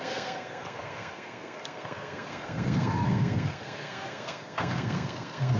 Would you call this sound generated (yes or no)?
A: yes